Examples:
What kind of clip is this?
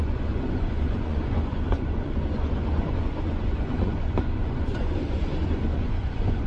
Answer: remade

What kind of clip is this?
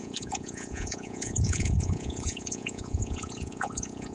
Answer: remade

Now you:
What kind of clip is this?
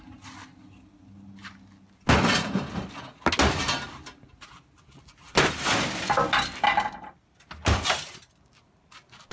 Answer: recorded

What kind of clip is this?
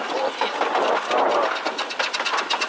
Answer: recorded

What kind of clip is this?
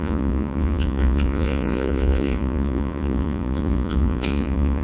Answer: remade